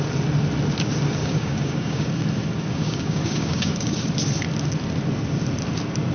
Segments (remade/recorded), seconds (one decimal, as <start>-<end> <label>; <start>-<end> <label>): 0.0-1.2 recorded; 1.2-2.1 remade; 2.1-2.7 recorded; 2.7-3.9 remade; 3.9-6.1 recorded